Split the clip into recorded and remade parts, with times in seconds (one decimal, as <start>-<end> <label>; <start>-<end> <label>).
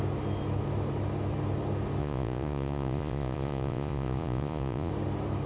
0.0-2.0 recorded; 2.0-4.9 remade; 4.9-5.5 recorded